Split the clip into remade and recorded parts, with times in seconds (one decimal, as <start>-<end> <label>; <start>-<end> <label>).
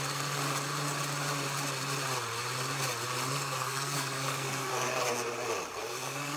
0.0-0.4 remade; 0.4-3.3 recorded; 3.3-4.7 remade; 4.7-5.7 recorded; 5.7-6.4 remade